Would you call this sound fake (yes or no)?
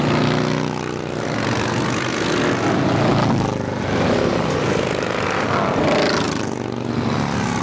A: no